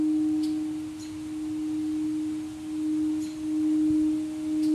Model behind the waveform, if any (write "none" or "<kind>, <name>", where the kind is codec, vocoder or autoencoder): none